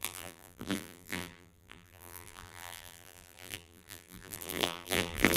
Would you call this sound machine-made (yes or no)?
yes